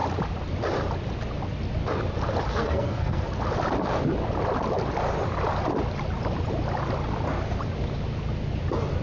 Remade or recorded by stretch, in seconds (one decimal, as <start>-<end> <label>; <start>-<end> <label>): 0.0-2.5 recorded; 2.5-3.3 remade; 3.3-9.0 recorded